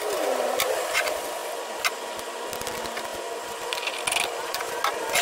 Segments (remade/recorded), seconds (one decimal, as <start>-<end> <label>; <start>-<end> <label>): 0.0-5.2 recorded